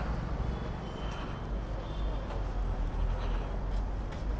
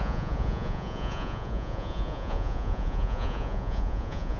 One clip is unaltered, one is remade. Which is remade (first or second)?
second